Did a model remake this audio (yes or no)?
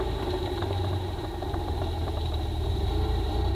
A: yes